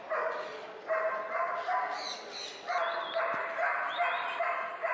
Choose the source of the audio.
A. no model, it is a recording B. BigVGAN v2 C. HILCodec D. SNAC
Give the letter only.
A